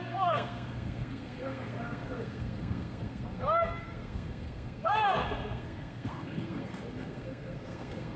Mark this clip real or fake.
fake